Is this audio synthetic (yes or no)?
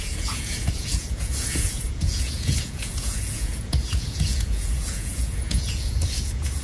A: yes